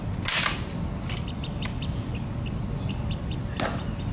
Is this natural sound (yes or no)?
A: yes